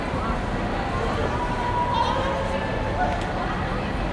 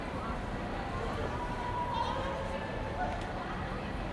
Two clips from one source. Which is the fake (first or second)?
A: second